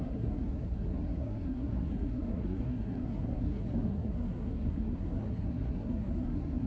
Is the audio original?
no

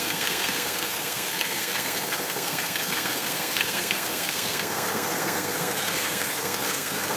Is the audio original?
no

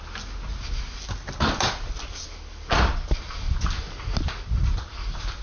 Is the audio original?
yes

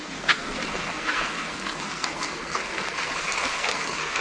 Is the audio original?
no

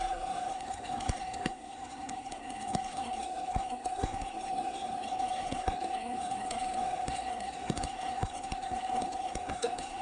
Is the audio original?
no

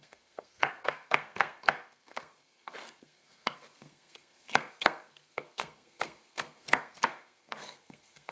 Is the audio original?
no